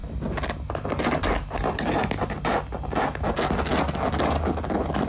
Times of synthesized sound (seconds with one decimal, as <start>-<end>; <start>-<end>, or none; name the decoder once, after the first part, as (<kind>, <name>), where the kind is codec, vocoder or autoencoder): none